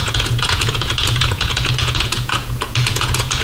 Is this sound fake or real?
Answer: fake